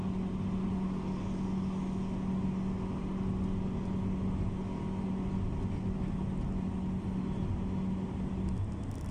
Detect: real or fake real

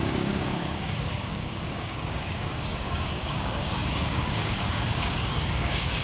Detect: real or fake fake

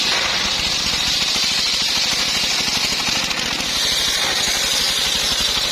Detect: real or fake real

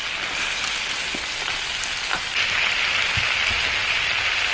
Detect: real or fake real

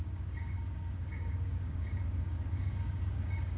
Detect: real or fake fake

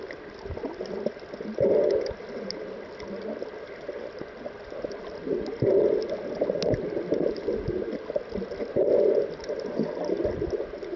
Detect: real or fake real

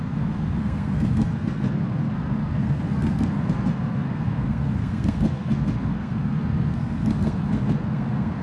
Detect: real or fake fake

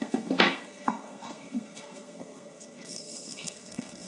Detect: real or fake fake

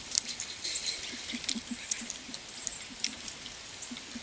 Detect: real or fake real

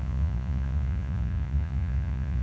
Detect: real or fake fake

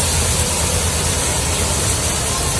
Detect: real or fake real